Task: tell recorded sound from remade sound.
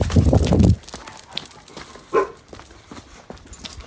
recorded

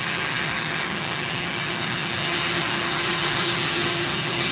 remade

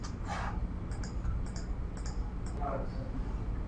recorded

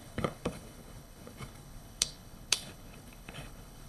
remade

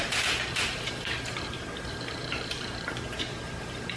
remade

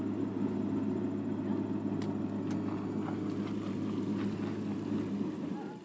recorded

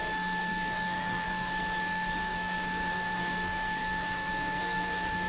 remade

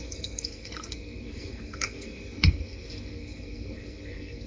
remade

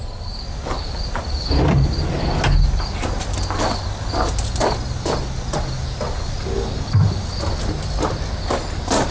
recorded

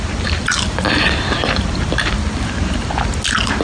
recorded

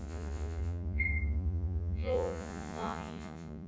remade